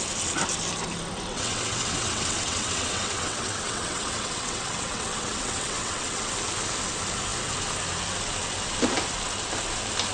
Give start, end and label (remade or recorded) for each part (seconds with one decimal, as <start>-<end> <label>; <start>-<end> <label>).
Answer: 0.0-1.3 recorded; 1.3-6.3 remade; 6.3-10.1 recorded